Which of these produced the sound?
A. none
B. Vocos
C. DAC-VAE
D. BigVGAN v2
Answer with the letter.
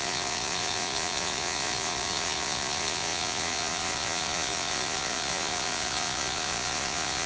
B